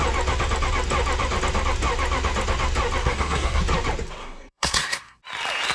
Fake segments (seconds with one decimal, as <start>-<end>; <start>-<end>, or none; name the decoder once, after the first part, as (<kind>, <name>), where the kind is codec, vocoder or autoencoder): 3.0-3.6 (codec, SNAC); 4.2-5.2